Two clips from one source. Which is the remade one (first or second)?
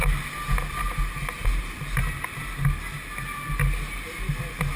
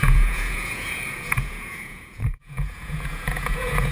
second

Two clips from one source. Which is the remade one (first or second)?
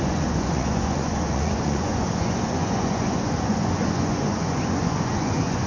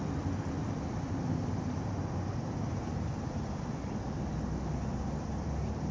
first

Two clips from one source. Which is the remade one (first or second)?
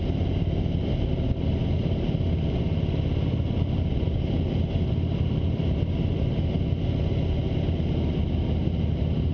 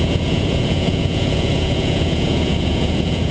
second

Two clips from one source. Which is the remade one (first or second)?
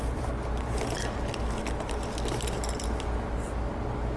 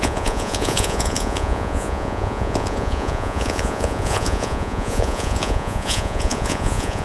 second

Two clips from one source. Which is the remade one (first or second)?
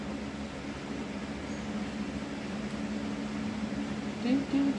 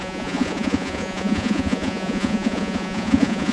second